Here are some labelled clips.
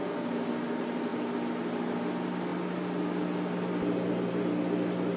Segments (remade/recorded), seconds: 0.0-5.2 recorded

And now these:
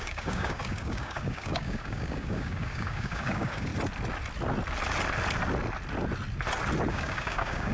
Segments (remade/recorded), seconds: 0.0-3.7 remade; 3.7-6.9 recorded; 6.9-7.7 remade

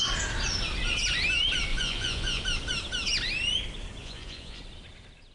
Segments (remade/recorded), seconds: 0.0-1.7 recorded; 1.7-2.4 remade; 2.4-4.0 recorded; 4.0-4.6 remade; 4.6-5.3 recorded

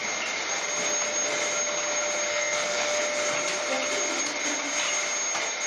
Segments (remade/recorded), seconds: 0.0-2.3 recorded; 2.3-3.0 remade; 3.0-5.7 recorded

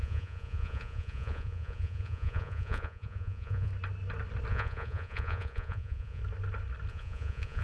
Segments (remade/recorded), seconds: 0.0-3.7 remade; 3.7-4.5 recorded; 4.5-6.2 remade; 6.2-6.9 recorded; 6.9-7.6 remade

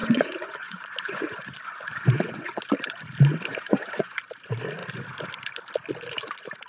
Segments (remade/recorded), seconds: 0.0-2.6 remade; 2.6-3.5 recorded; 3.5-4.2 remade; 4.2-6.7 recorded